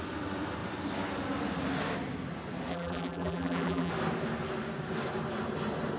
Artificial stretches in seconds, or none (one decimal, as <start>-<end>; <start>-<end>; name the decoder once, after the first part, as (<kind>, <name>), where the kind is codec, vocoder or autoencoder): 2.7-3.9 (vocoder, BigVGAN v2)